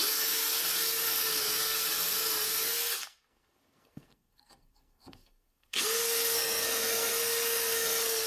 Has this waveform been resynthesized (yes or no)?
yes